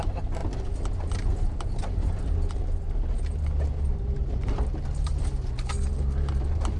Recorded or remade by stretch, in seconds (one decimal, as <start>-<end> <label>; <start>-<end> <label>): 0.0-0.4 remade; 0.4-1.0 recorded; 1.0-2.4 remade; 2.4-3.8 recorded; 3.8-5.1 remade; 5.1-5.7 recorded; 5.7-6.8 remade